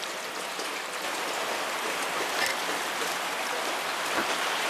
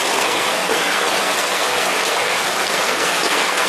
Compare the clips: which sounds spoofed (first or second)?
second